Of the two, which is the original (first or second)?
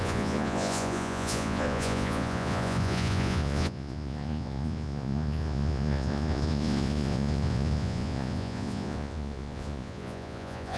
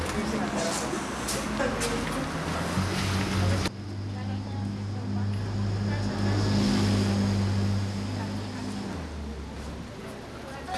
second